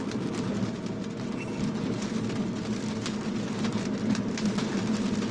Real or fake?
real